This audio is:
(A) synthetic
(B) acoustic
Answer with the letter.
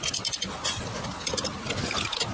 B